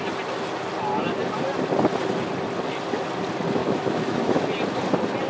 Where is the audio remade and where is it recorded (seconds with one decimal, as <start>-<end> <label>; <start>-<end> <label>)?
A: 0.0-3.6 recorded; 3.6-4.5 remade; 4.5-5.3 recorded